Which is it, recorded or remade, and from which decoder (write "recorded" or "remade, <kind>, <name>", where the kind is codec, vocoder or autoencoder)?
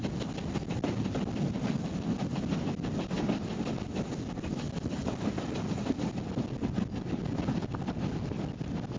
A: recorded